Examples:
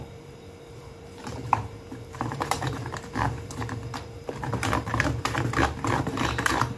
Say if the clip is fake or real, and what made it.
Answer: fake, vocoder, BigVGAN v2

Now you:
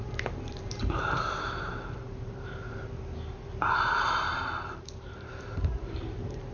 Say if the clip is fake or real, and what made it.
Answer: fake, vocoder, BigVGAN v2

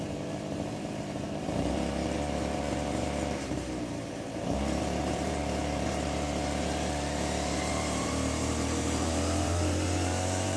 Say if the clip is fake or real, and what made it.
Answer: fake, vocoder, BigVGAN v2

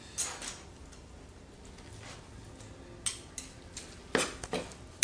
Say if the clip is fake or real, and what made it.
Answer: real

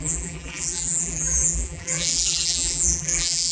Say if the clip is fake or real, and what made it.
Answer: fake, vocoder, BigVGAN v2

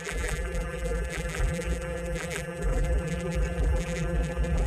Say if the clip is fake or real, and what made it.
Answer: fake, vocoder, BigVGAN v2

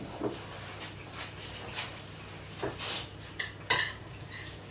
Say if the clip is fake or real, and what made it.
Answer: real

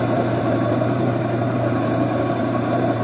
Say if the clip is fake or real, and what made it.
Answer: fake, vocoder, BigVGAN v2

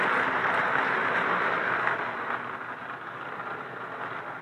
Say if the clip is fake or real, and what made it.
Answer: real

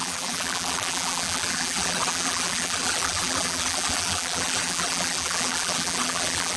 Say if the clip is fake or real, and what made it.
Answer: fake, vocoder, BigVGAN v2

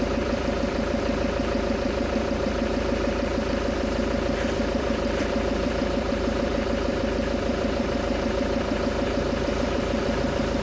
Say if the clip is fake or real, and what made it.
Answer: fake, vocoder, BigVGAN v2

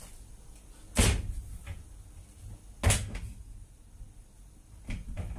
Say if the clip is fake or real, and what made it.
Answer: real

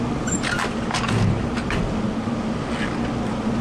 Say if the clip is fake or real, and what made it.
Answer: real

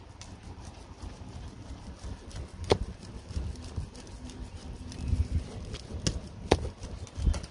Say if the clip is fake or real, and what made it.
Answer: real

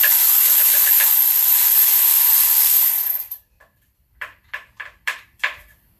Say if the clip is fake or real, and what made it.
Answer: fake, vocoder, BigVGAN v2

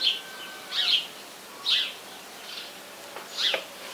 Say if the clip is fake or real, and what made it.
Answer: fake, vocoder, BigVGAN v2